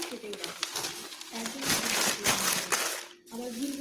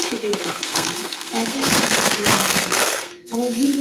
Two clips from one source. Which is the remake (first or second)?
second